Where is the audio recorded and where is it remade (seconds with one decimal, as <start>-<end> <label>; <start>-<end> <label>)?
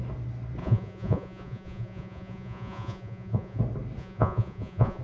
0.0-0.6 recorded; 0.6-3.6 remade; 3.6-4.0 recorded; 4.0-5.0 remade